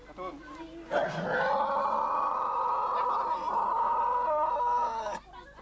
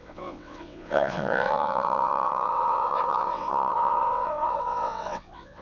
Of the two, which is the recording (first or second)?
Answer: first